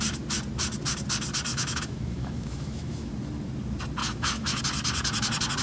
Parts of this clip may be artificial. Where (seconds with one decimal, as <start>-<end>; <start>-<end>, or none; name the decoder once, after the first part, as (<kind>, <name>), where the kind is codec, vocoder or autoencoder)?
1.5-3.1 (autoencoder, DAC-VAE); 4.0-4.6